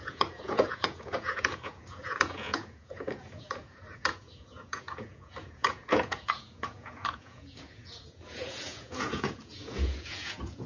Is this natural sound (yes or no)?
no